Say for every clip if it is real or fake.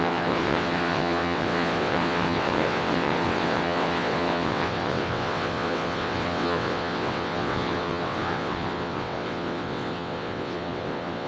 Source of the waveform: fake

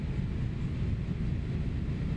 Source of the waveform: real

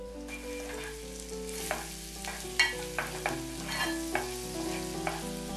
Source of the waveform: real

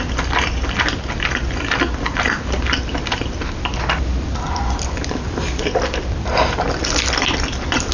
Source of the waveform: real